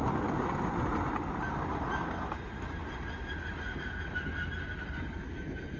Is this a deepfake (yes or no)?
no